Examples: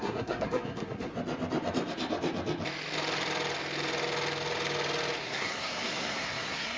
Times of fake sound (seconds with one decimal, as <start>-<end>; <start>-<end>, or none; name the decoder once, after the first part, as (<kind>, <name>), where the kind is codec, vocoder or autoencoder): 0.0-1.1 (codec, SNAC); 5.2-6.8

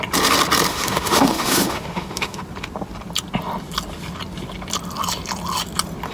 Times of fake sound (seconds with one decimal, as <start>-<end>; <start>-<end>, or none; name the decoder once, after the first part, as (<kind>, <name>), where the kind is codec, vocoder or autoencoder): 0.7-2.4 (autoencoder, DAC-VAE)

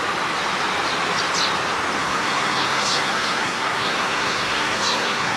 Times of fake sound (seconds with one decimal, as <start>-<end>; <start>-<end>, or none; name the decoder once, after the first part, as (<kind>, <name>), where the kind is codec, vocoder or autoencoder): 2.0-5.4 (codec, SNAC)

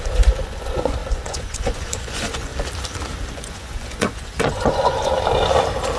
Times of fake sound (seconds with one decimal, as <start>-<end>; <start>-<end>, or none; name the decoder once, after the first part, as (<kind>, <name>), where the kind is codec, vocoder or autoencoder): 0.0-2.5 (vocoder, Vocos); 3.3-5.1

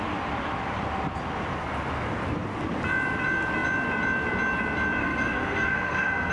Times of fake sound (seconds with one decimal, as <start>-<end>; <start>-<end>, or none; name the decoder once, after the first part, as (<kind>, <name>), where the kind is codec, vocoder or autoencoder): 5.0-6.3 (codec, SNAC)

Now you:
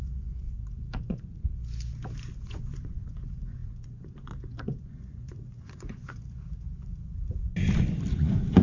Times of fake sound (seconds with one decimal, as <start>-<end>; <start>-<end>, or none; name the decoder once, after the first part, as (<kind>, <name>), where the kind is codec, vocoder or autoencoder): 0.0-1.6 (vocoder, Vocos); 2.4-6.9; 8.1-8.6

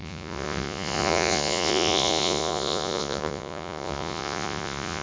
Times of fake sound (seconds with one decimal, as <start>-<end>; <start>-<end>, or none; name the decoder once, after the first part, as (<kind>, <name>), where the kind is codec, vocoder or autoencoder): 0.0-5.0 (vocoder, Vocos)

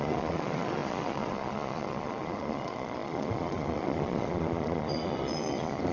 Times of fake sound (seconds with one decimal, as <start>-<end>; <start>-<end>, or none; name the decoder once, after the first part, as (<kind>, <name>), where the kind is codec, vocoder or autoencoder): 0.0-5.9 (vocoder, Vocos)